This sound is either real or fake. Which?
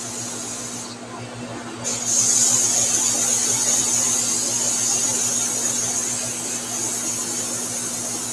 real